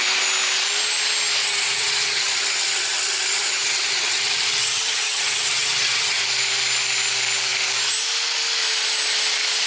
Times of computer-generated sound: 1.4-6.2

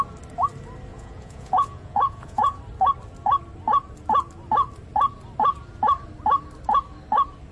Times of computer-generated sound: 0.9-2.6

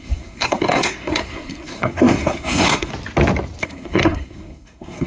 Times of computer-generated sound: 0.0-2.9; 3.6-5.1

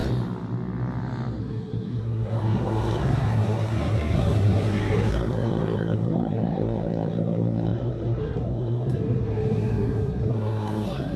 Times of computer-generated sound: 1.4-11.2

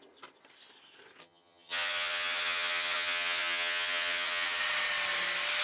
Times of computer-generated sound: 1.2-4.6